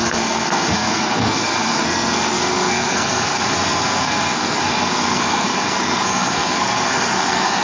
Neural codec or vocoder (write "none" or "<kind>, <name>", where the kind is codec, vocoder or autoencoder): codec, SNAC